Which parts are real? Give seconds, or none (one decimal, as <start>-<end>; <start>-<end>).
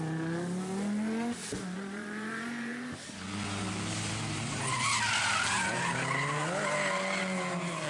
0.0-1.4; 3.2-7.9